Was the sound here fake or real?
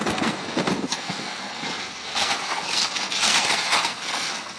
fake